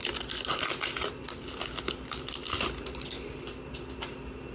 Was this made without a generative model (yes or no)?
yes